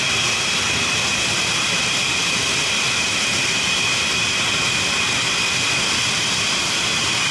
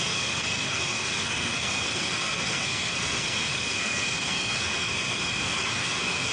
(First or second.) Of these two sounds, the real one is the first